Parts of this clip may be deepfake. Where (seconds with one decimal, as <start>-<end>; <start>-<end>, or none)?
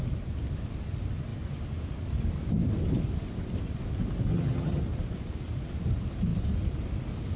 4.3-4.8